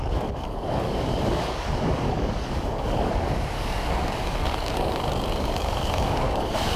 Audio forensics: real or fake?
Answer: fake